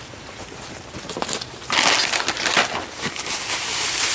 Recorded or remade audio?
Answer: recorded